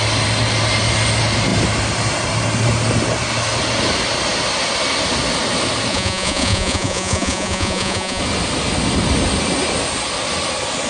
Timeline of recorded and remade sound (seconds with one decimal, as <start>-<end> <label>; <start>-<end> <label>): 0.0-5.9 recorded; 5.9-8.2 remade; 8.2-10.9 recorded